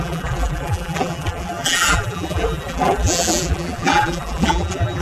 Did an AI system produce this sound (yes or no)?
yes